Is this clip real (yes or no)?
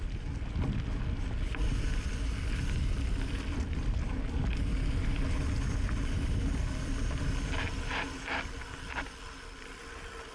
yes